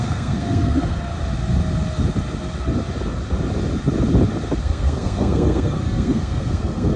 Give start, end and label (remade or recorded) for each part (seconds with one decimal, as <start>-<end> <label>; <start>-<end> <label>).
0.0-1.1 remade; 1.1-4.6 recorded; 4.6-7.0 remade